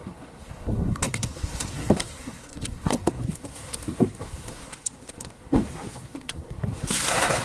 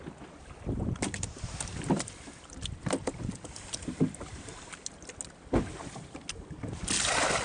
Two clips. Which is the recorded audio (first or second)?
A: second